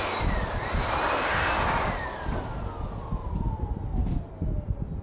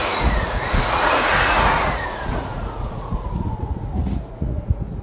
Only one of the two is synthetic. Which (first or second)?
second